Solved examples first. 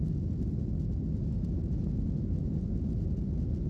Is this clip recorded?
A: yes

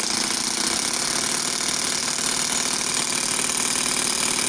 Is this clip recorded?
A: yes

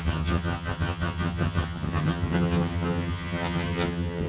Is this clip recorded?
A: no